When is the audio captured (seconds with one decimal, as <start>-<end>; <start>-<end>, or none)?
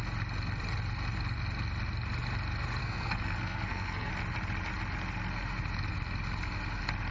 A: 0.0-2.8; 4.1-7.1